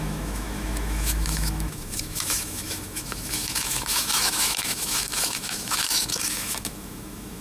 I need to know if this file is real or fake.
fake